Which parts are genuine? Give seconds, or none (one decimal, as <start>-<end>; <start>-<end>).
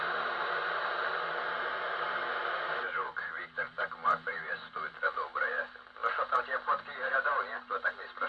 0.0-8.3